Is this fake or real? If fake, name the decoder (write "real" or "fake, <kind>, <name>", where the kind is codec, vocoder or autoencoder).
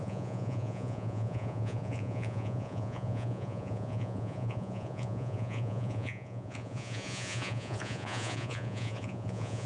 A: fake, vocoder, Vocos